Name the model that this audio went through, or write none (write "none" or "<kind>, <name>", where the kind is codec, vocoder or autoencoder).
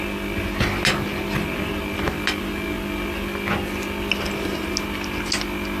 none